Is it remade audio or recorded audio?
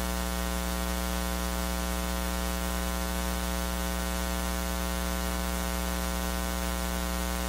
recorded